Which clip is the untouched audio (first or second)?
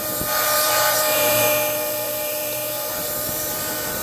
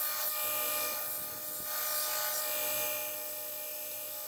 second